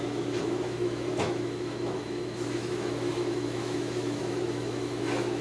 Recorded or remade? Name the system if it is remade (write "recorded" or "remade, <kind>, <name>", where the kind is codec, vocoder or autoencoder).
remade, autoencoder, DAC-VAE